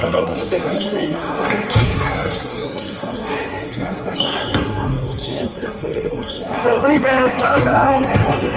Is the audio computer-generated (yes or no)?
yes